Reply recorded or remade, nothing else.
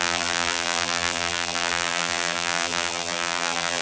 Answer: remade